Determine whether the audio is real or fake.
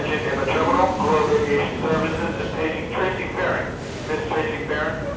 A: real